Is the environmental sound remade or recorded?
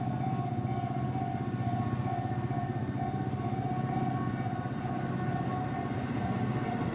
recorded